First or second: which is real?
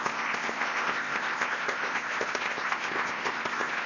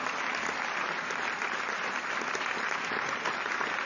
second